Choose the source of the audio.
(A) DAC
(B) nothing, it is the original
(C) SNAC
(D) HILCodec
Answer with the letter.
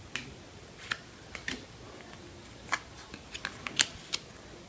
B